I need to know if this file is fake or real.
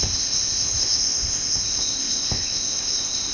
fake